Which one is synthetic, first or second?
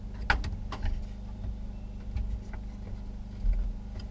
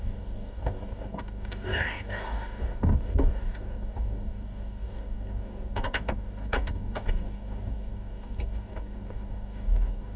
second